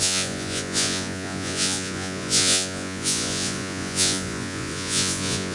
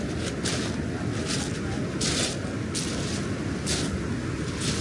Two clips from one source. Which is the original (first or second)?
second